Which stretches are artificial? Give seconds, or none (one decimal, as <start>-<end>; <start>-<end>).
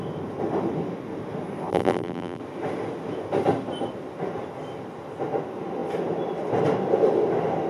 1.7-2.4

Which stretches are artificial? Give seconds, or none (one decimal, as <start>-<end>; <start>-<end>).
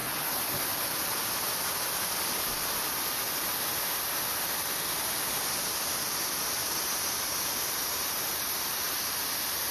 6.6-9.7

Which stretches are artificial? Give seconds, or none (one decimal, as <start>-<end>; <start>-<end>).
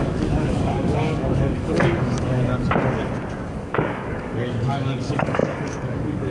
0.0-2.5; 3.6-6.3